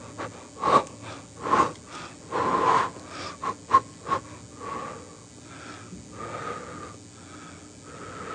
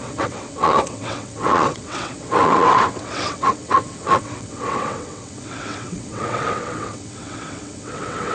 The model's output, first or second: second